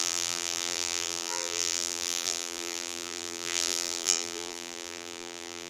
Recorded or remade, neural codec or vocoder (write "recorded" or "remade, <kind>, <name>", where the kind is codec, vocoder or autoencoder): remade, vocoder, BigVGAN v2